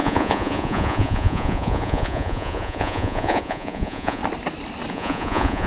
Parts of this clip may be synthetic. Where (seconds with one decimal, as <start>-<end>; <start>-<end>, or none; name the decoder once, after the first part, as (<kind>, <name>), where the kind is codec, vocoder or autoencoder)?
0.0-4.2 (vocoder, Vocos); 4.9-5.7